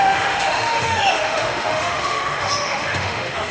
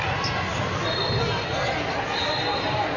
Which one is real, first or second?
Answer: second